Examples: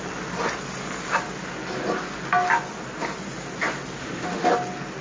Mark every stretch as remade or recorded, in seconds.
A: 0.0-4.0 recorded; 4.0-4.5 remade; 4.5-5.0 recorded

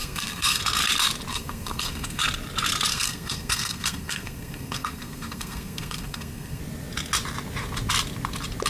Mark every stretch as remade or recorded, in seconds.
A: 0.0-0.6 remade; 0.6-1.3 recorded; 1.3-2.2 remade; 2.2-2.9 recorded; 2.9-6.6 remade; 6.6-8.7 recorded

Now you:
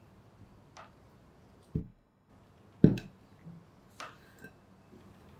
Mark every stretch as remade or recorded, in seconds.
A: 0.0-1.8 recorded; 1.8-2.3 remade; 2.3-5.4 recorded

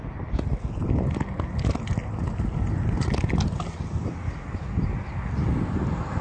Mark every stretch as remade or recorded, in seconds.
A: 0.0-6.2 recorded